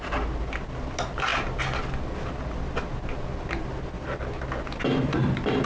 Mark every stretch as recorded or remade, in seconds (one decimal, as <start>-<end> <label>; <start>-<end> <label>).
0.0-5.7 recorded